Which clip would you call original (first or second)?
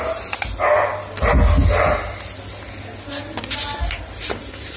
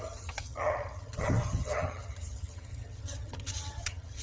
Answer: first